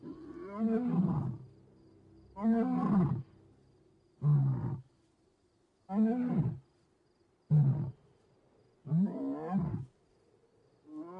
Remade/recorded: recorded